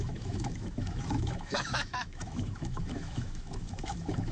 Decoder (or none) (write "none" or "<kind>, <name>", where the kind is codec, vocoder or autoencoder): autoencoder, DAC-VAE